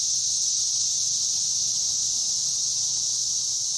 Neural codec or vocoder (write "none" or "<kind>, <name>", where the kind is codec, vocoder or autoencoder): none